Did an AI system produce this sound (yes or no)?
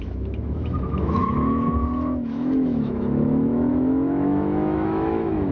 yes